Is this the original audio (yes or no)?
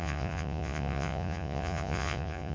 no